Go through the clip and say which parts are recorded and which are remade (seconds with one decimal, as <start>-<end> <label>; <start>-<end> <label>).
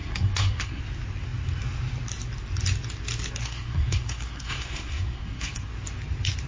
0.0-0.8 remade; 0.8-3.4 recorded; 3.4-5.7 remade; 5.7-6.5 recorded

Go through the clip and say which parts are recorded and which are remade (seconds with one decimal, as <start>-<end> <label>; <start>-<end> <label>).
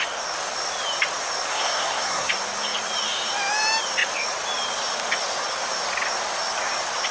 0.0-1.5 recorded; 1.5-2.3 remade; 2.3-7.1 recorded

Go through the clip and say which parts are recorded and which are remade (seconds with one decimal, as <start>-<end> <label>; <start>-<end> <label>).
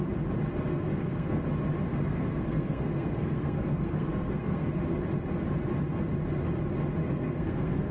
0.0-0.7 recorded; 0.7-1.4 remade; 1.4-1.9 recorded; 1.9-4.8 remade; 4.8-7.0 recorded; 7.0-7.9 remade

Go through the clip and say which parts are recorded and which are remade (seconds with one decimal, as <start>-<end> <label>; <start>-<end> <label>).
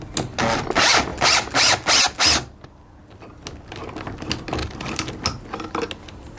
0.0-4.6 recorded; 4.6-5.1 remade; 5.1-6.4 recorded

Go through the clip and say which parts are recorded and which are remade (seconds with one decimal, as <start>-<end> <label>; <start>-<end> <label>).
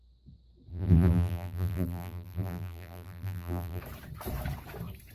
0.0-0.7 recorded; 0.7-3.8 remade; 3.8-5.1 recorded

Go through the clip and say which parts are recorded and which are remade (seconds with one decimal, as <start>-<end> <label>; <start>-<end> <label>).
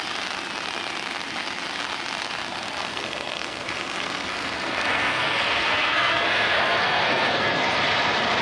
0.0-2.8 recorded; 2.8-7.8 remade; 7.8-8.4 recorded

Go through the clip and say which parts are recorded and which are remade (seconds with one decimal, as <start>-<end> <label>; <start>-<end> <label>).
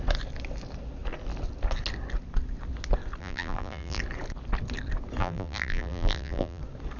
0.0-3.2 recorded; 3.2-4.0 remade; 4.0-5.2 recorded; 5.2-6.6 remade; 6.6-7.0 recorded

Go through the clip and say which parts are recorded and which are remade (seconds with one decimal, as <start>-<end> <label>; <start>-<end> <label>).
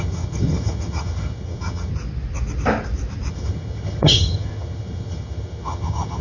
0.0-1.9 remade; 1.9-3.3 recorded; 3.3-6.2 remade